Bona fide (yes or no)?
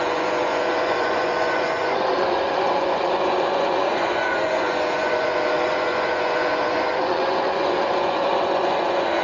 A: no